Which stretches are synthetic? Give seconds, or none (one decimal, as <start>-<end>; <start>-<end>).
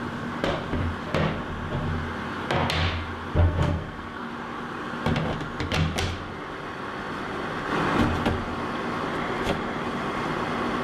3.4-4.3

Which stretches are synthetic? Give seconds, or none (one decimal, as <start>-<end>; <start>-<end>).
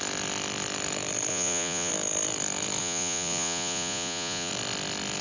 1.3-1.9; 2.8-4.5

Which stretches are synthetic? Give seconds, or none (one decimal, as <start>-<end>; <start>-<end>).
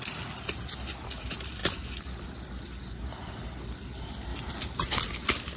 none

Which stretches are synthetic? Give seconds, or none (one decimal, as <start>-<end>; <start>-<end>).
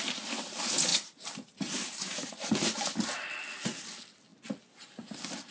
0.9-2.5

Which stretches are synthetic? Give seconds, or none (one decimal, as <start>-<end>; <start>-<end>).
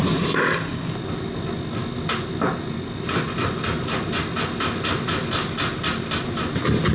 none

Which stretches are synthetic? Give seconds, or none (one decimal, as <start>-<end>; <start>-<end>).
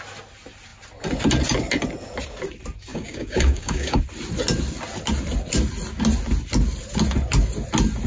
2.9-4.0